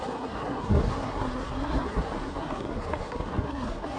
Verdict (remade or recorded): remade